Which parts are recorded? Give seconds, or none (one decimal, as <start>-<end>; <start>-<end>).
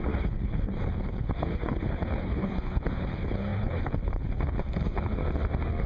5.2-5.9